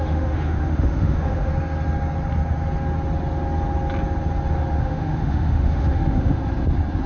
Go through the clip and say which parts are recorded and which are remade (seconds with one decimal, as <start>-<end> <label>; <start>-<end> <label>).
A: 0.0-1.5 remade; 1.5-4.8 recorded; 4.8-6.4 remade; 6.4-7.1 recorded